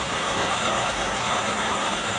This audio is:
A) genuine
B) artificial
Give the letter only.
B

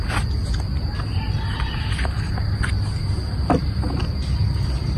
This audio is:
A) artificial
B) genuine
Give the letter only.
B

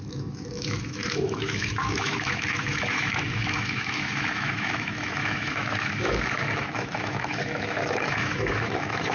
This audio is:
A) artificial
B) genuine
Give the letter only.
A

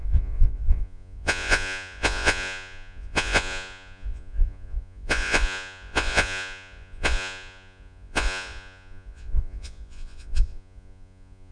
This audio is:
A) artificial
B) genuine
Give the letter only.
A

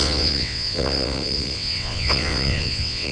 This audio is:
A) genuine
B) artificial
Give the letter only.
B